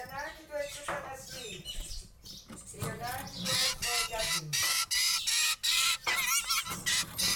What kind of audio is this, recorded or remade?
recorded